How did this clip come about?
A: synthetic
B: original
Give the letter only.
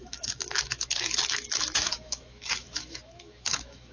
A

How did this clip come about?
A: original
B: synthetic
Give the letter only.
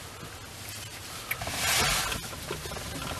A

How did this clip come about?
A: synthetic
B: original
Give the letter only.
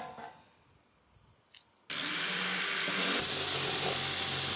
B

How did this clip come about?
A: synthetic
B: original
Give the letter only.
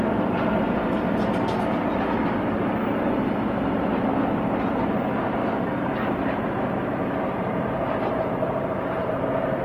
B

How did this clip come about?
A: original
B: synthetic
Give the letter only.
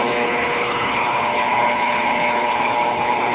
B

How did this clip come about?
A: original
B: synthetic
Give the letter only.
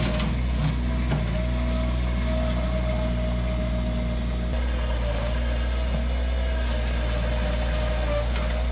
A